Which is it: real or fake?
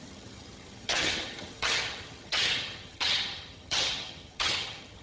fake